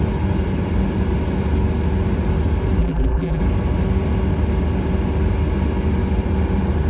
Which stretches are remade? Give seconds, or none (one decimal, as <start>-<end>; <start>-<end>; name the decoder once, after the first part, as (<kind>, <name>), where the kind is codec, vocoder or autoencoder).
2.8-3.4 (vocoder, BigVGAN v2)